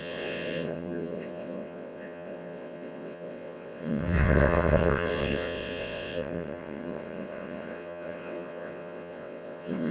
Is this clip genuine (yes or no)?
no